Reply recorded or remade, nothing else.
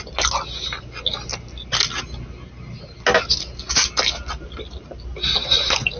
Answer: recorded